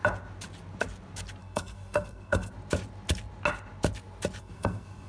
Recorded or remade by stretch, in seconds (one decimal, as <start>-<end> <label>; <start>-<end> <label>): 0.0-1.4 recorded; 1.4-2.5 remade; 2.5-4.4 recorded; 4.4-5.1 remade